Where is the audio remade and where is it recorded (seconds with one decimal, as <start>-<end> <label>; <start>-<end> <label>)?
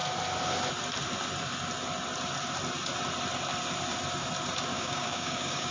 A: 0.0-4.7 recorded; 4.7-5.7 remade